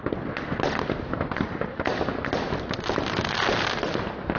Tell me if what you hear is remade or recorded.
recorded